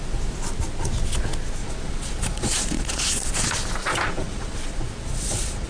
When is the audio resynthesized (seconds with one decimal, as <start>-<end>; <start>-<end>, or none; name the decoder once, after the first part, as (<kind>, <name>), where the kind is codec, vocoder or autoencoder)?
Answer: 1.6-3.1 (vocoder, Vocos); 3.8-5.7